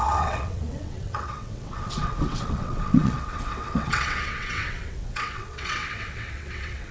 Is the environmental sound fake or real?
fake